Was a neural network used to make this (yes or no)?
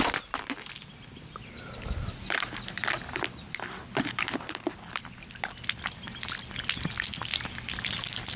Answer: no